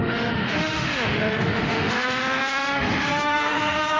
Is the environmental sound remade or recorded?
remade